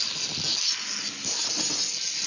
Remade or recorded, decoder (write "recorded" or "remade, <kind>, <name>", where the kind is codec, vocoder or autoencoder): recorded